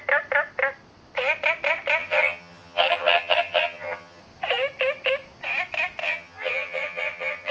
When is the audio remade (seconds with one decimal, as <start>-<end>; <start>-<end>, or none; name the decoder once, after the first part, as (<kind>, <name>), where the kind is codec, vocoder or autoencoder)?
2.0-4.2 (vocoder, HiFi-GAN); 6.0-7.5